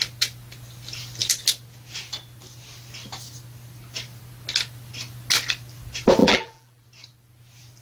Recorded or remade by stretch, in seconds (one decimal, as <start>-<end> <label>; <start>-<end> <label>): 0.0-6.2 recorded; 6.2-6.8 remade; 6.8-7.8 recorded